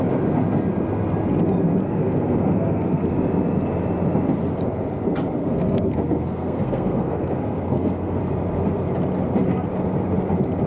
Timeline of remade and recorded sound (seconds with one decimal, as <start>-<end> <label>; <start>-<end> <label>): 0.0-1.8 recorded; 1.8-3.1 remade; 3.1-5.4 recorded; 5.4-8.2 remade; 8.2-10.7 recorded